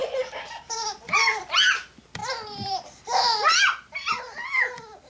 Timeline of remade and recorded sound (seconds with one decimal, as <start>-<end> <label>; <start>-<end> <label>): 0.0-1.2 remade; 1.2-2.2 recorded; 2.2-4.2 remade; 4.2-5.1 recorded